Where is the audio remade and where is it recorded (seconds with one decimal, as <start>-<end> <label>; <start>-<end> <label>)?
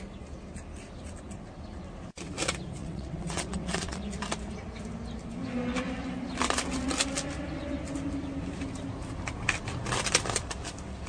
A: 0.0-2.8 recorded; 2.8-4.0 remade; 4.0-11.1 recorded